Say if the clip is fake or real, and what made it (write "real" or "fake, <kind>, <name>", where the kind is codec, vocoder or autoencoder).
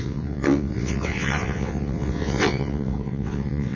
fake, vocoder, WaveNeXt